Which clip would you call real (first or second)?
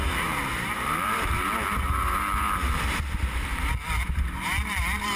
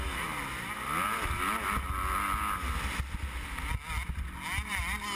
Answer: second